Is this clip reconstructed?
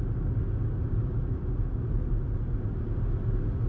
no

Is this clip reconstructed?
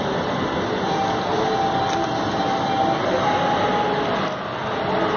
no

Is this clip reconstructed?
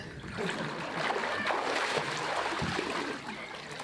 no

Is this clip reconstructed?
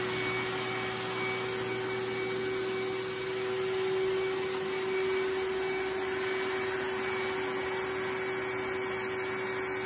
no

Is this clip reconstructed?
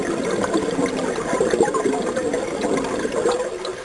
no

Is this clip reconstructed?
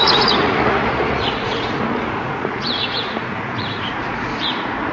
yes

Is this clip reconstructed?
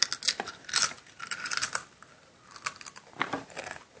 no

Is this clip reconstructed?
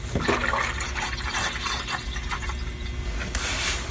no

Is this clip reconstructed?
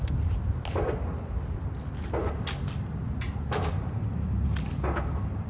no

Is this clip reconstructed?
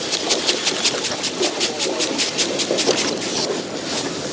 no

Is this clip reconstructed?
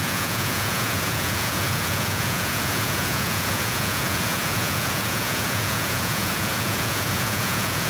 yes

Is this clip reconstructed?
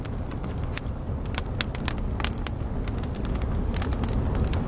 no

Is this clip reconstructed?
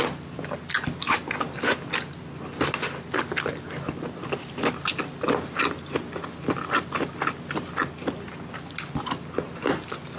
no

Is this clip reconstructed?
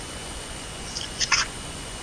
yes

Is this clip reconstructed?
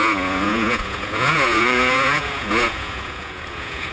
yes